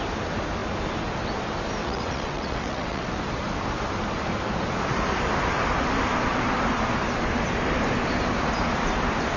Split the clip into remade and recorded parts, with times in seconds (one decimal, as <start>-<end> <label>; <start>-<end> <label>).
0.0-1.8 recorded; 1.8-3.1 remade; 3.1-9.4 recorded